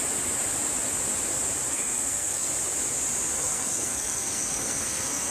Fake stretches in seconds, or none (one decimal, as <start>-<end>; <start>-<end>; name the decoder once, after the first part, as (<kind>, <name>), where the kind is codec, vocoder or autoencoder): 1.7-2.5 (codec, SNAC); 3.3-5.3